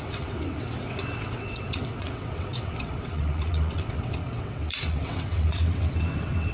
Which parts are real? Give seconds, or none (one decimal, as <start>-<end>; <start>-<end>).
none